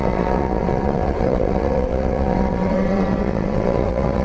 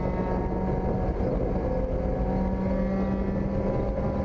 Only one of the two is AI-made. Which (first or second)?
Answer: first